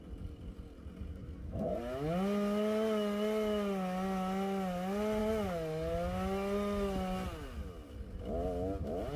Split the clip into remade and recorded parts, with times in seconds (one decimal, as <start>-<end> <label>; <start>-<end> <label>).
0.0-1.1 recorded; 1.1-1.8 remade; 1.8-9.2 recorded